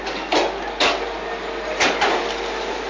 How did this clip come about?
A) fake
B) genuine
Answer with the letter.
B